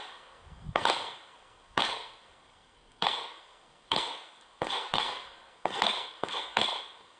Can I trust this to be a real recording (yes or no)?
no